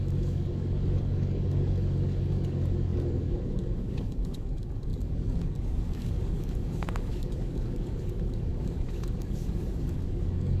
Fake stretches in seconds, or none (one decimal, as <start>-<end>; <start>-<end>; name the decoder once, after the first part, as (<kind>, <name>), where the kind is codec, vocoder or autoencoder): 0.0-10.6 (codec, DAC)